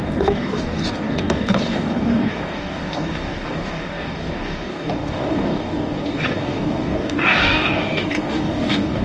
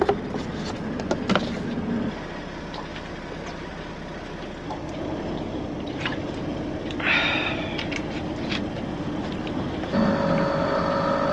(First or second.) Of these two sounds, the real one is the second